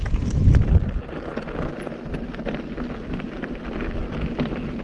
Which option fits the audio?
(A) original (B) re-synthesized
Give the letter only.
A